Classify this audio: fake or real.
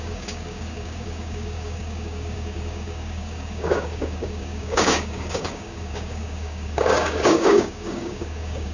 fake